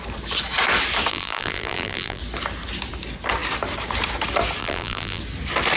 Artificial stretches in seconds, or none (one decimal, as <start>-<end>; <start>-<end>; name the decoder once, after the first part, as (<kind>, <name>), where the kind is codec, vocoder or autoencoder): 1.1-2.2 (vocoder, BigVGAN v2); 4.6-5.2